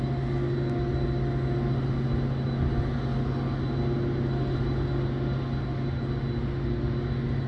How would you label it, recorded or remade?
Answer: recorded